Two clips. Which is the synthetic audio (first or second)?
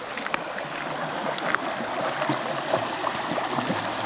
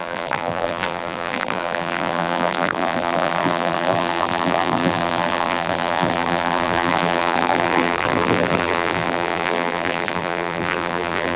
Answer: second